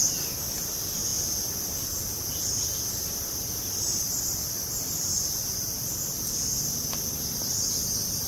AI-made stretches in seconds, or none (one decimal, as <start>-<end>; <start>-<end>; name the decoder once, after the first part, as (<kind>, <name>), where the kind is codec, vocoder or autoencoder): none